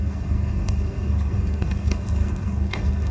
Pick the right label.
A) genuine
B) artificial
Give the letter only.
B